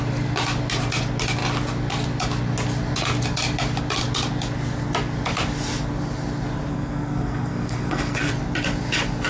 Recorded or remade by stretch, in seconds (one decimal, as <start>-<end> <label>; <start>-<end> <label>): 0.0-6.7 recorded; 6.7-8.3 remade; 8.3-9.3 recorded